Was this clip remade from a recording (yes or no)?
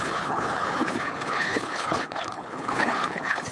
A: yes